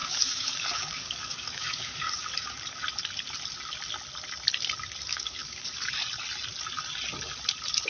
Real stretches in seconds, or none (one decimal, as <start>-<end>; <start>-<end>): 2.2-5.1; 5.9-7.9